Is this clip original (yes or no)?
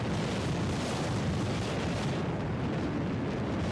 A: yes